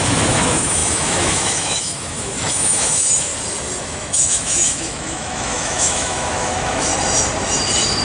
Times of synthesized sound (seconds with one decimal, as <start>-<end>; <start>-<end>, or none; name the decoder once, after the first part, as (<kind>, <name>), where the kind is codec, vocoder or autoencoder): 0.0-3.3 (autoencoder, DAC-VAE); 3.8-6.9